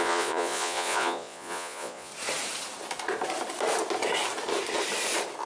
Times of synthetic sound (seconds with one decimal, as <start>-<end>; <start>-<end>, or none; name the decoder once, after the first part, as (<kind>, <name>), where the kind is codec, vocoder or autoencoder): 0.0-2.1 (vocoder, Vocos)